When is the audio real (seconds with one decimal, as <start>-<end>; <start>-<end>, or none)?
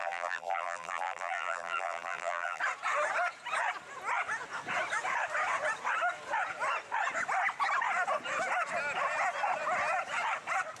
2.6-10.8